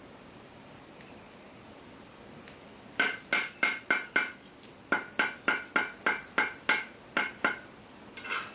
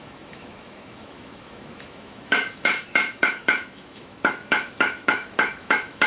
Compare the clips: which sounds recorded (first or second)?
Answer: first